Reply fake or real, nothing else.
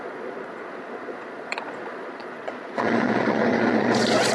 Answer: fake